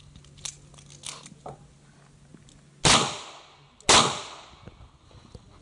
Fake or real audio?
real